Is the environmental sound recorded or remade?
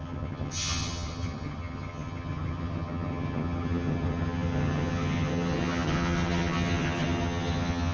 remade